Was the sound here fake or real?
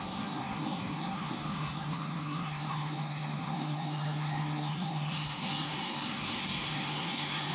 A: fake